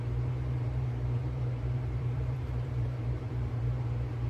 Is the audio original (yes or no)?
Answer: no